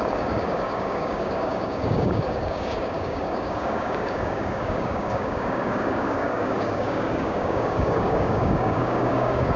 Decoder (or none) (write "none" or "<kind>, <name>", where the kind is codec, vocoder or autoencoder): codec, DAC